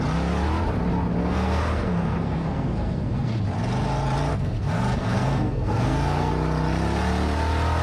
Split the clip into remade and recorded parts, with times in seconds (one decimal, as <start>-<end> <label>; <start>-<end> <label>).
0.0-1.2 recorded; 1.2-3.4 remade; 3.4-4.3 recorded; 4.3-6.3 remade; 6.3-7.8 recorded